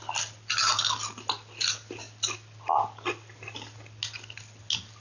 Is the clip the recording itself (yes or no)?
yes